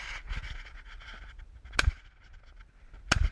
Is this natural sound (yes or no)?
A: yes